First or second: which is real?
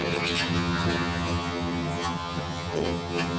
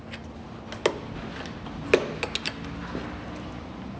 second